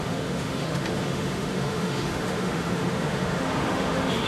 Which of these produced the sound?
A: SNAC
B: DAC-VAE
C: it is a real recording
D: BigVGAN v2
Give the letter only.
B